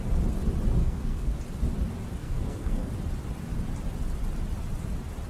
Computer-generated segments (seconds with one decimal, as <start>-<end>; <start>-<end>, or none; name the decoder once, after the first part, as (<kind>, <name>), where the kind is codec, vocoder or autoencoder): 0.8-1.4 (codec, SNAC); 2.2-2.9